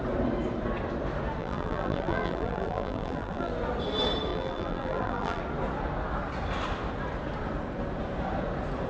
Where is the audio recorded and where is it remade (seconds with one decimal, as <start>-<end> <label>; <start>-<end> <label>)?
0.0-1.4 recorded; 1.4-3.5 remade; 3.5-4.3 recorded; 4.3-5.4 remade; 5.4-8.9 recorded